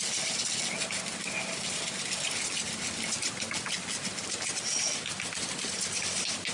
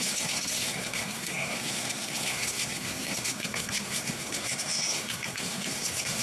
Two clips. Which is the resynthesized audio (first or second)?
second